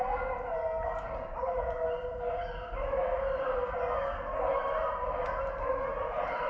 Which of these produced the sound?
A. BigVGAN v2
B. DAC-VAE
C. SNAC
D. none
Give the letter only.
D